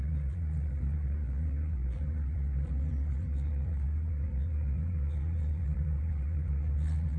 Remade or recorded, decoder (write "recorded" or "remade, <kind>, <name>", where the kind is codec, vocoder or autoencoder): remade, vocoder, Vocos